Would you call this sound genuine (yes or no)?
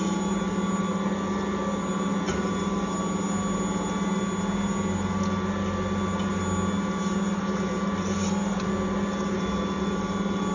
yes